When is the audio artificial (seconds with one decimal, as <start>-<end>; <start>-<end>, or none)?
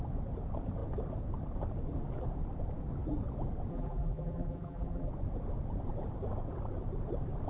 3.7-5.1